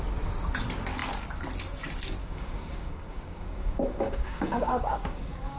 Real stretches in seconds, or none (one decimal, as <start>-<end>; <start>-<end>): 0.0-2.2